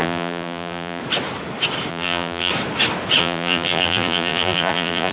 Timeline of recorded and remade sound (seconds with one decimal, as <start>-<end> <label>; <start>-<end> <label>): 0.0-1.0 remade; 1.0-1.9 recorded; 1.9-2.5 remade; 2.5-3.2 recorded; 3.2-5.1 remade